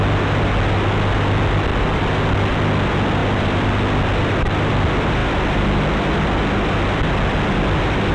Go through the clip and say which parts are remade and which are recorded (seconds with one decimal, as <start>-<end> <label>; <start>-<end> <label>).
0.0-8.1 recorded